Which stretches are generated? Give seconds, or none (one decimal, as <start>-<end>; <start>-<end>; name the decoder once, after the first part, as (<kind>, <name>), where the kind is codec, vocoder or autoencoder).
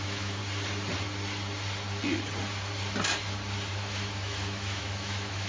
0.0-0.4 (autoencoder, DAC-VAE); 3.7-5.5